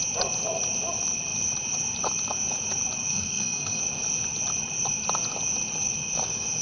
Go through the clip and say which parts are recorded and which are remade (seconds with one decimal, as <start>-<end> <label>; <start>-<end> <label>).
0.0-3.1 recorded; 3.1-3.8 remade; 3.8-6.6 recorded